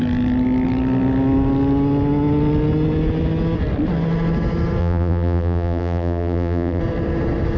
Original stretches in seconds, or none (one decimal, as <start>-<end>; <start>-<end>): 0.0-4.8; 6.8-7.6